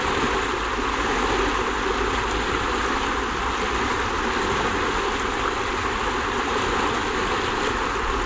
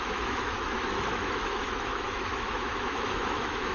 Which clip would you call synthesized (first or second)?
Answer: second